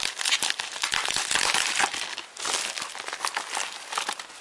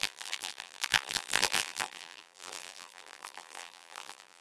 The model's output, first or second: second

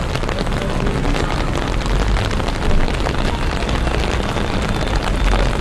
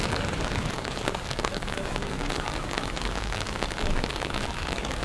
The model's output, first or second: second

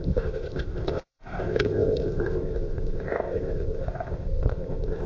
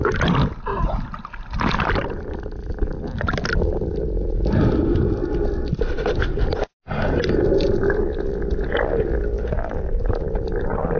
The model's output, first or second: first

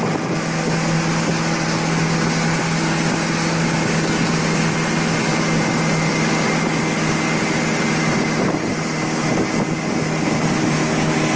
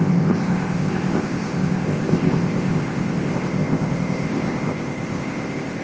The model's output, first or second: second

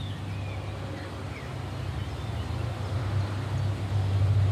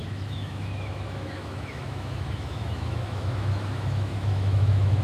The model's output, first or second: second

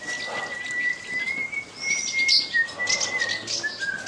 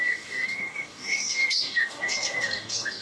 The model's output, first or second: second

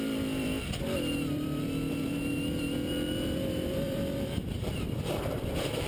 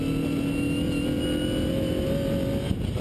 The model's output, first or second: first